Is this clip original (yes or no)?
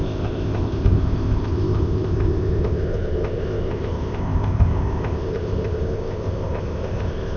no